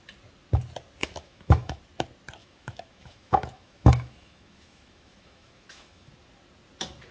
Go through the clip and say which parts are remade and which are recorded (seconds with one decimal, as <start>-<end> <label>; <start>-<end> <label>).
0.0-1.0 recorded; 1.0-1.8 remade; 1.8-2.4 recorded; 2.4-6.1 remade; 6.1-7.1 recorded